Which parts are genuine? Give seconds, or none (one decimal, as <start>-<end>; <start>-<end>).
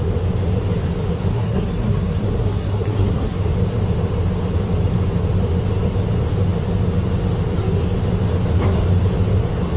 0.0-1.3; 3.4-9.8